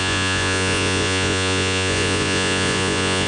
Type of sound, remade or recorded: remade